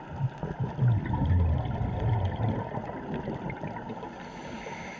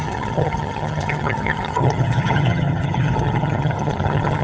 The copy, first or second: second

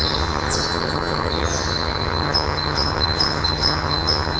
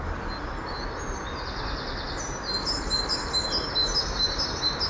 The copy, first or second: first